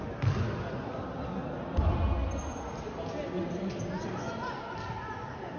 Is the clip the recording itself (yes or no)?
yes